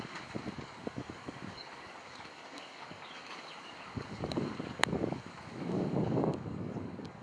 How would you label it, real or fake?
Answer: fake